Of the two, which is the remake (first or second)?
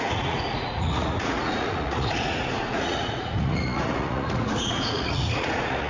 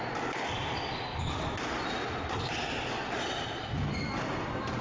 first